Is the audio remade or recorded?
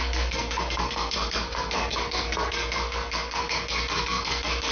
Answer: remade